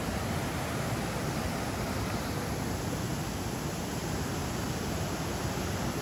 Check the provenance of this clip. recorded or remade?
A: recorded